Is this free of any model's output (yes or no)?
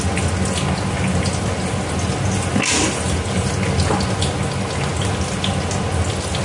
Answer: yes